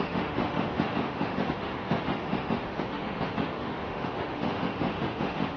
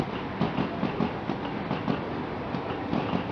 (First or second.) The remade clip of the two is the first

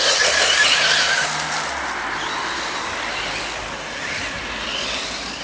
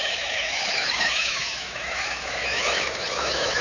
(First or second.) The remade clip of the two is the second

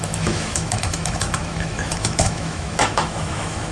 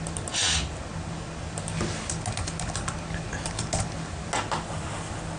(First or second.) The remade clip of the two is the first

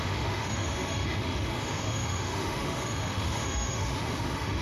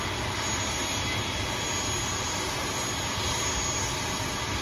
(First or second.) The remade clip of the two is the first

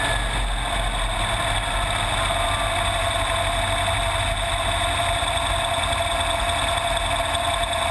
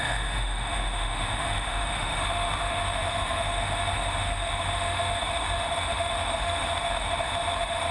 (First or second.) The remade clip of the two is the second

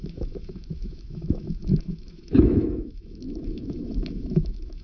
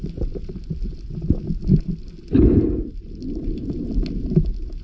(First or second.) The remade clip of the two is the first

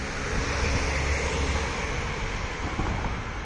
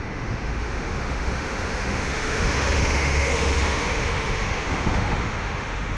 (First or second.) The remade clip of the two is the second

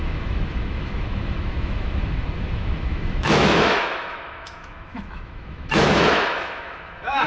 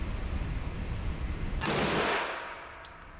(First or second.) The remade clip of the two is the first